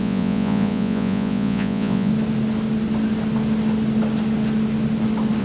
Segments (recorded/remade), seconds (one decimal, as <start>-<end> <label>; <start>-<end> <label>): 0.0-2.1 remade; 2.1-5.4 recorded